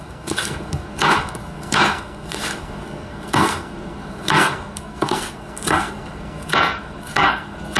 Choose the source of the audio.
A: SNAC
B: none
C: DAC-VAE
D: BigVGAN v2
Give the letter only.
A